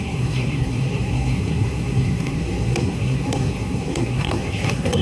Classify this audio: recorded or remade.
remade